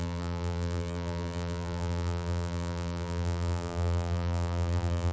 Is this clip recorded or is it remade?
remade